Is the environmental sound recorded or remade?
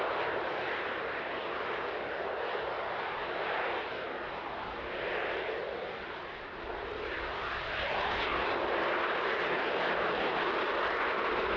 recorded